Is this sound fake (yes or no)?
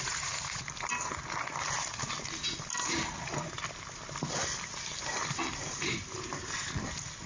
no